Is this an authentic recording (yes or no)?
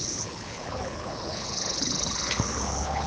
no